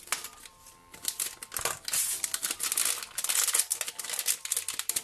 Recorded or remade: recorded